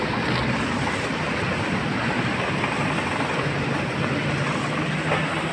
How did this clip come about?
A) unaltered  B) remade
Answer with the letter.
A